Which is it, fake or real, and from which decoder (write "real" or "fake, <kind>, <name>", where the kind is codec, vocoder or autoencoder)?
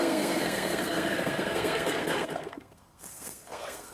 fake, codec, SNAC